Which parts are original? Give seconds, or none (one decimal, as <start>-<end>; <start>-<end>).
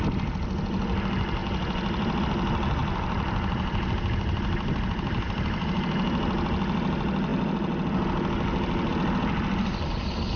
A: 0.0-1.4; 2.2-2.8; 5.8-10.4